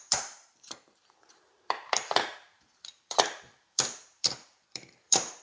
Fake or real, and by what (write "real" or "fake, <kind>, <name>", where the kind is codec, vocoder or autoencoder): fake, vocoder, BigVGAN v2